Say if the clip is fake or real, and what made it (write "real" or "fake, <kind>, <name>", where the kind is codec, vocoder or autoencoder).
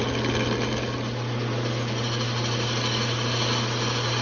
real